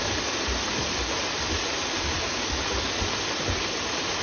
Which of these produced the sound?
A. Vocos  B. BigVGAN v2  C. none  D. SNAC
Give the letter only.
C